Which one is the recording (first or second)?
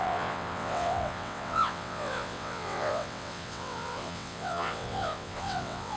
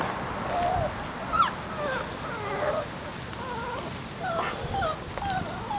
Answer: second